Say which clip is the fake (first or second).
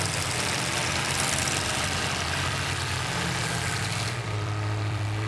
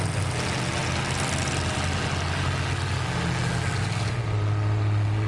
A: first